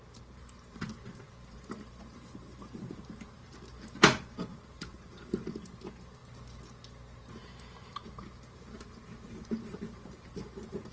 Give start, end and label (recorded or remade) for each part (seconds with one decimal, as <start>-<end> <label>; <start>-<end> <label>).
0.0-6.2 remade; 6.2-7.3 recorded; 7.3-10.9 remade